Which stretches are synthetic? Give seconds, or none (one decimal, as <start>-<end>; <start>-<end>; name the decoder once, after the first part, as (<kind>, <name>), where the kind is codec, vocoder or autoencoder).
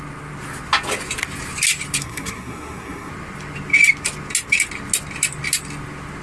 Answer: 2.0-3.1 (codec, SNAC)